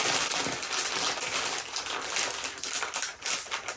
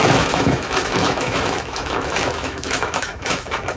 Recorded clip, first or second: first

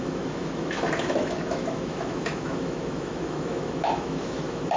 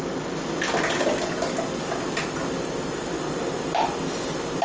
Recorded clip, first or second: second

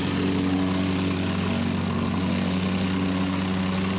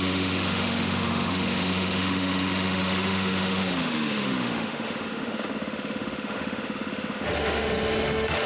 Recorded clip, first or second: first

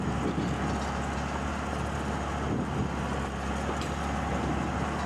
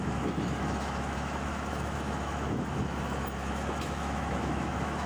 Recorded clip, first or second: first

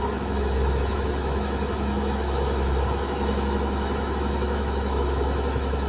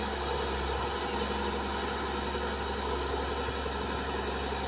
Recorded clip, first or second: second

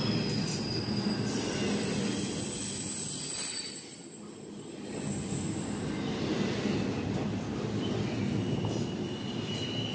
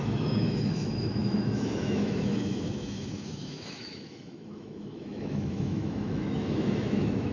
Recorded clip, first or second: first